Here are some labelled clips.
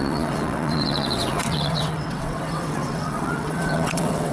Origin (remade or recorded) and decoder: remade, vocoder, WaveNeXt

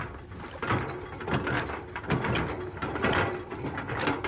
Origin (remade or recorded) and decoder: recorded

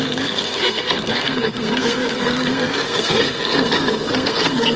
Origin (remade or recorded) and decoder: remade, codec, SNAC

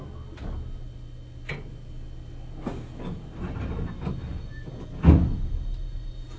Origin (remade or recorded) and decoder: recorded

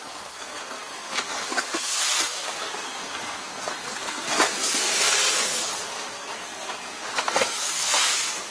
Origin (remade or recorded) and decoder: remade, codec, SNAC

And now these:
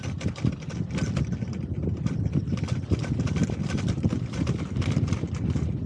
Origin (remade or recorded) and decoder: recorded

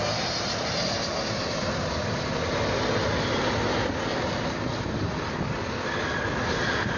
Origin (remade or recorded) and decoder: recorded